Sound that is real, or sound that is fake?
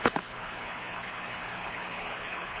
fake